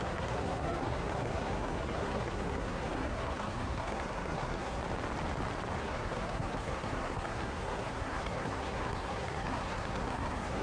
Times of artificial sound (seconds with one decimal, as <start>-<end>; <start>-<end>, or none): 0.0-4.8; 5.8-10.6